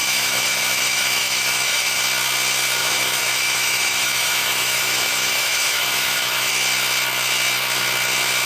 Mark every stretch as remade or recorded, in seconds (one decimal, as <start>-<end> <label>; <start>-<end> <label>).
0.0-2.0 remade; 2.0-2.8 recorded; 2.8-6.5 remade; 6.5-8.5 recorded